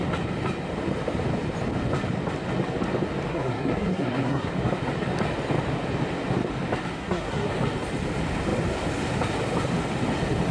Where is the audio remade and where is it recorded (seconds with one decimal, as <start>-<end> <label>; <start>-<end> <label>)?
0.0-3.3 recorded; 3.3-4.5 remade; 4.5-7.0 recorded; 7.0-7.5 remade; 7.5-10.5 recorded